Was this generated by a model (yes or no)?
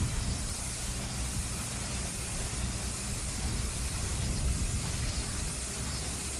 yes